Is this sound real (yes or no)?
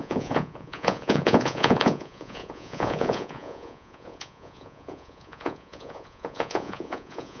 no